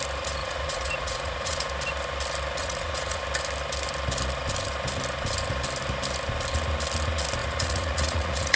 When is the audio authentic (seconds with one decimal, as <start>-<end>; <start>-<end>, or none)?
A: 0.0-0.4; 1.7-2.6; 3.2-7.4